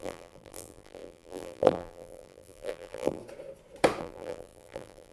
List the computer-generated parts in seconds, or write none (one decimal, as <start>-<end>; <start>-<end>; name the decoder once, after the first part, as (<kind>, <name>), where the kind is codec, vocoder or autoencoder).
0.0-3.2 (vocoder, BigVGAN v2); 4.0-5.1